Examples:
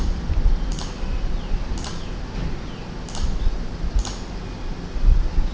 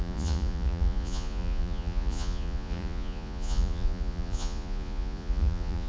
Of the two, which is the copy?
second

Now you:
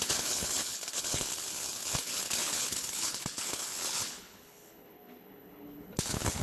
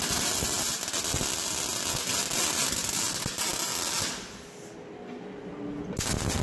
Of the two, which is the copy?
first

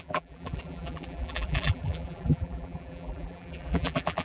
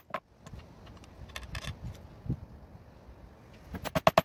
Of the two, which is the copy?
first